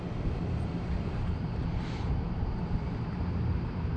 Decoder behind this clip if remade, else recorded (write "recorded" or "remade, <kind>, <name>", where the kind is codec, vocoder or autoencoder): remade, vocoder, BigVGAN v2